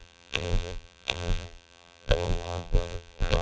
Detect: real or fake fake